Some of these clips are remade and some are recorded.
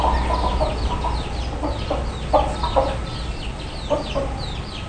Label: recorded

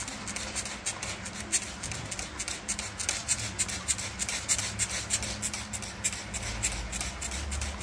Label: recorded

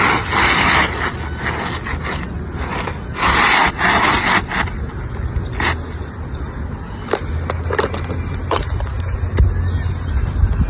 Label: recorded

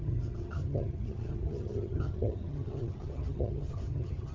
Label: remade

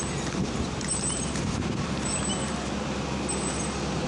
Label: remade